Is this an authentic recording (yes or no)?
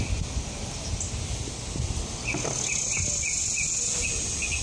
yes